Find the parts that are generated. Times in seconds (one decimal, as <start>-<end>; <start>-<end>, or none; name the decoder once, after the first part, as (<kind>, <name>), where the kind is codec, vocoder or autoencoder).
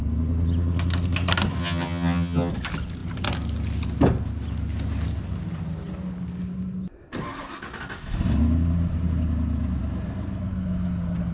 1.6-2.5 (vocoder, HiFi-GAN)